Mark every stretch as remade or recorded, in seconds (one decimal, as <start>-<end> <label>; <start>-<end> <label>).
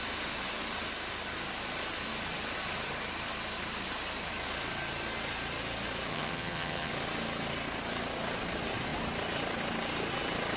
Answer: 0.0-6.1 recorded; 6.1-6.9 remade; 6.9-10.6 recorded